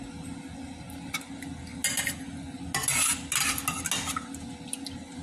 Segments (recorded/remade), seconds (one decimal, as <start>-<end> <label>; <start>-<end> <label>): 0.0-5.2 recorded